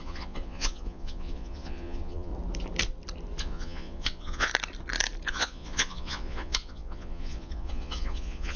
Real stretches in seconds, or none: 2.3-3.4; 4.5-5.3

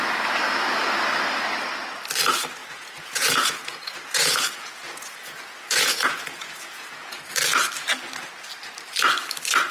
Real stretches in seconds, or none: 0.0-2.6; 7.2-9.7